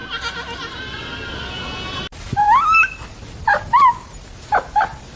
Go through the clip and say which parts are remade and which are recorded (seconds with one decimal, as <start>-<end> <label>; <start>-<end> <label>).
0.0-1.5 recorded; 1.5-2.0 remade; 2.0-5.2 recorded